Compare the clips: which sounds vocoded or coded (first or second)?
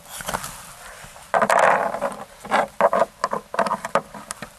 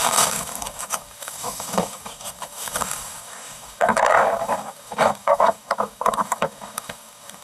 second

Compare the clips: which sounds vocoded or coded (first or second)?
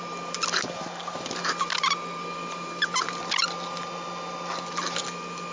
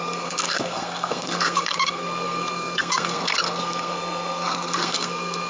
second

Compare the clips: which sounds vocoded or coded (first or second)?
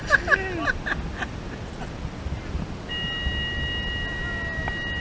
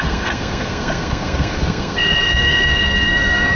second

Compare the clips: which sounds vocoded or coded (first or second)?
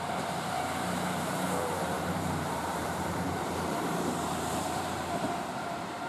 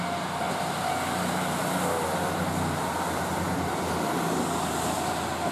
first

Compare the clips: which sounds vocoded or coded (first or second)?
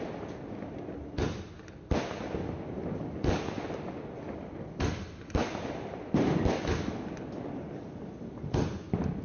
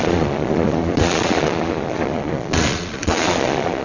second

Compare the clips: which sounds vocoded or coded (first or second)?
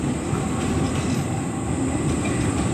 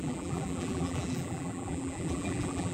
second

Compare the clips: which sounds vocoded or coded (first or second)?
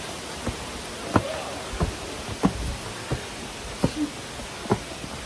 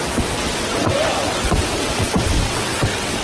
second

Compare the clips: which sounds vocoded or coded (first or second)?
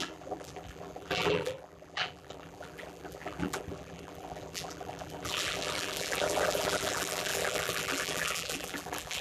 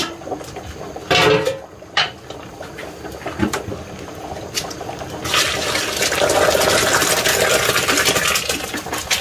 first